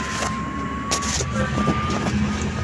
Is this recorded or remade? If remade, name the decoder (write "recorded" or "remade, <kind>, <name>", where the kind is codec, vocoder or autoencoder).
recorded